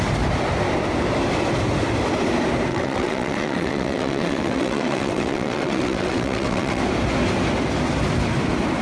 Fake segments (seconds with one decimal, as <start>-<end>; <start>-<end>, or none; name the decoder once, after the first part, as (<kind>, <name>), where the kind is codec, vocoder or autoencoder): 2.7-6.8 (vocoder, WaveNeXt)